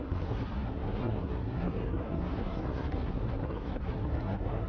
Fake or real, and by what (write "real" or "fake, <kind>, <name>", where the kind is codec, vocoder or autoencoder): fake, codec, SNAC